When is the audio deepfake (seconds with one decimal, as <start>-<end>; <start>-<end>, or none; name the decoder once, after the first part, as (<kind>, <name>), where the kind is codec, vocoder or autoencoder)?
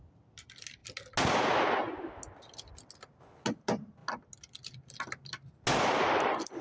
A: none